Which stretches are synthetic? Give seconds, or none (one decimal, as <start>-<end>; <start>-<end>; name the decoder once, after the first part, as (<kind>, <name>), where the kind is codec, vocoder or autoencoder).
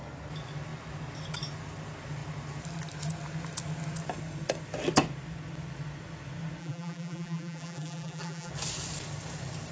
6.6-8.5 (vocoder, BigVGAN v2)